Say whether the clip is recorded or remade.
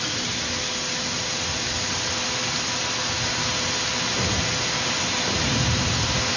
recorded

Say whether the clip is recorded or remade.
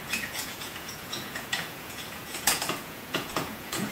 remade